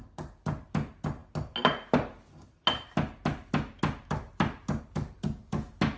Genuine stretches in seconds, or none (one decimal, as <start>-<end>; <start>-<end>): 0.0-6.0